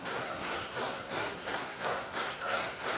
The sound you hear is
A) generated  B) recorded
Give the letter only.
A